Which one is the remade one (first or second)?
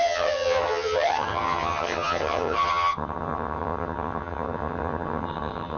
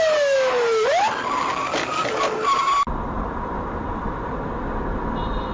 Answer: first